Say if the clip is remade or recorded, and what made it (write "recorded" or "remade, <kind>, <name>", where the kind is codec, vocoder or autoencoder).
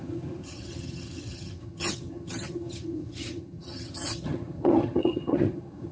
remade, vocoder, HiFi-GAN